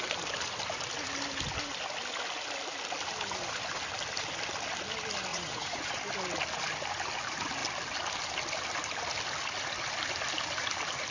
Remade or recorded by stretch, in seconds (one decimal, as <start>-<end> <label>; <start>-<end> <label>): 0.0-5.3 recorded; 5.3-5.9 remade; 5.9-11.1 recorded